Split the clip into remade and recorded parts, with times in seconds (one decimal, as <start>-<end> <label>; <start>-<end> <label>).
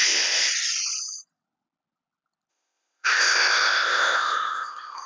0.0-0.5 remade; 0.5-2.5 recorded; 2.5-5.1 remade